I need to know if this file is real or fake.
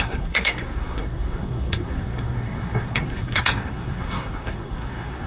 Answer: fake